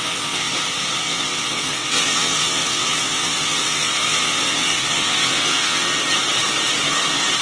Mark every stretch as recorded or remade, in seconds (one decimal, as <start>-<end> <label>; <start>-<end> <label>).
0.0-0.5 remade; 0.5-1.0 recorded; 1.0-5.9 remade; 5.9-7.4 recorded